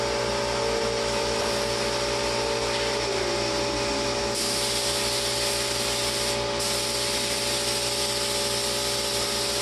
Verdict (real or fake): real